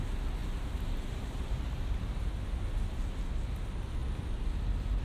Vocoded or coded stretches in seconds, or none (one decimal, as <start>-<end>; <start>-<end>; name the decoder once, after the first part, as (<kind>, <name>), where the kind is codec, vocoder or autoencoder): 0.4-2.3 (vocoder, BigVGAN v2)